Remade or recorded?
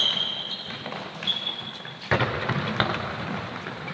recorded